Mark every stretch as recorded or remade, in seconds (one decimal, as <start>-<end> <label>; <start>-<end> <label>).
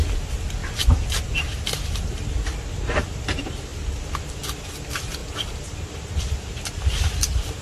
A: 0.0-7.6 recorded